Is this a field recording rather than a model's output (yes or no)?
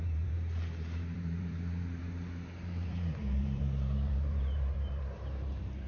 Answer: no